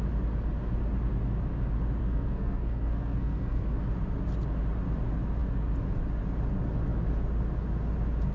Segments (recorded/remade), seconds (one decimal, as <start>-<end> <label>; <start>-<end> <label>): 0.0-2.0 recorded; 2.0-3.8 remade; 3.8-8.3 recorded